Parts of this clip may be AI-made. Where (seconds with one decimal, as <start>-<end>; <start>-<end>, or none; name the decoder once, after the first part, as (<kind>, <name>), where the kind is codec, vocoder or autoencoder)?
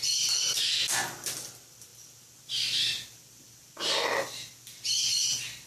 none